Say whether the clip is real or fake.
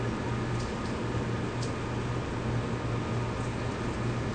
real